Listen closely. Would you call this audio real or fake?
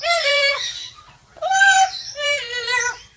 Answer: fake